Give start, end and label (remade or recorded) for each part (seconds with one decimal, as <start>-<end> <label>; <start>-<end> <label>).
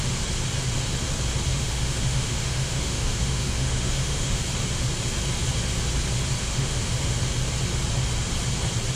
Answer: 0.0-1.5 recorded; 1.5-4.4 remade; 4.4-6.4 recorded; 6.4-7.2 remade; 7.2-9.0 recorded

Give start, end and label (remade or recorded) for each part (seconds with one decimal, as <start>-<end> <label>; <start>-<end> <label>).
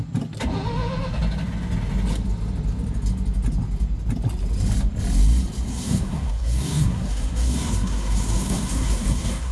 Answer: 0.0-5.7 recorded; 5.7-9.5 remade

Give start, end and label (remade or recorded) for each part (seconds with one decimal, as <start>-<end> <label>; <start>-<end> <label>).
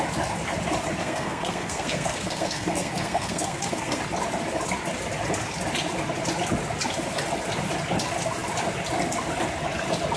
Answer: 0.0-1.0 recorded; 1.0-4.0 remade; 4.0-10.2 recorded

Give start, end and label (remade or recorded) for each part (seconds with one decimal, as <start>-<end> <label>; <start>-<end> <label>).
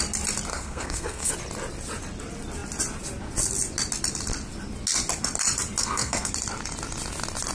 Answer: 0.0-0.5 recorded; 0.5-1.3 remade; 1.3-5.8 recorded; 5.8-6.3 remade; 6.3-7.5 recorded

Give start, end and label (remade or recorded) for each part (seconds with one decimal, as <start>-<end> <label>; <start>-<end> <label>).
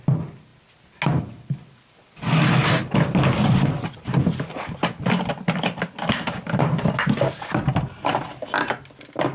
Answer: 0.0-9.3 recorded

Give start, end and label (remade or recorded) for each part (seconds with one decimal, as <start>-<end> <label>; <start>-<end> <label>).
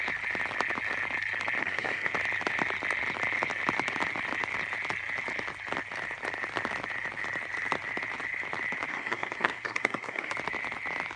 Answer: 0.0-1.6 recorded; 1.6-2.1 remade; 2.1-8.9 recorded; 8.9-10.3 remade; 10.3-11.2 recorded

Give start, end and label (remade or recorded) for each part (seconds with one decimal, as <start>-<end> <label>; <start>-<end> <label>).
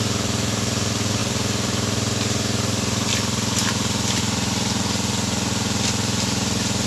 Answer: 0.0-6.9 recorded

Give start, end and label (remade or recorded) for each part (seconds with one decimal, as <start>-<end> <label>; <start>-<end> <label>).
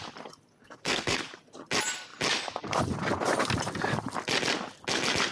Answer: 0.0-0.6 recorded; 0.6-1.2 remade; 1.2-5.3 recorded